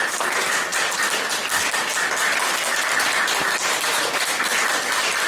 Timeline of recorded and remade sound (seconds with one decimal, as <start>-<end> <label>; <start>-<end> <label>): 0.0-5.3 recorded